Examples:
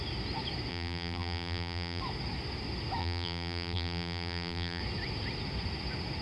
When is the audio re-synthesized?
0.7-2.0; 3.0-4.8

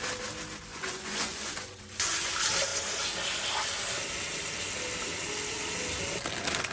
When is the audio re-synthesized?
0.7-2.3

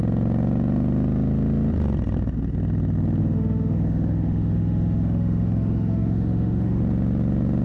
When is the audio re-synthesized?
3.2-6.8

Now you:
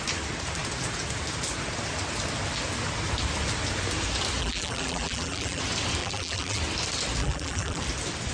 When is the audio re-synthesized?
4.4-5.6; 6.0-6.6; 7.2-7.8

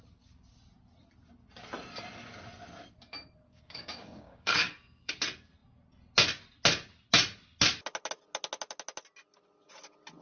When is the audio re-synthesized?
3.5-5.1